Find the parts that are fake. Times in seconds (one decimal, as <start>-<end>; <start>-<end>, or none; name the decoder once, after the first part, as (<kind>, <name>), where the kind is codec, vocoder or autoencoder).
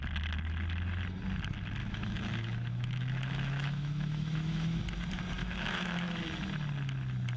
1.8-4.8 (autoencoder, DAC-VAE); 5.4-6.2